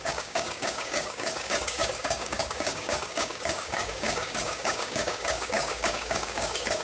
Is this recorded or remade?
remade